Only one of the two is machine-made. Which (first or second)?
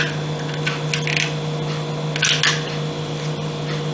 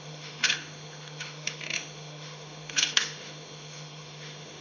second